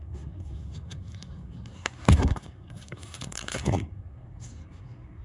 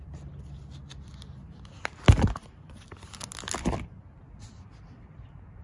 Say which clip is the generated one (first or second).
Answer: first